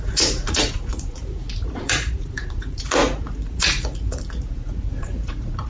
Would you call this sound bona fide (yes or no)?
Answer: no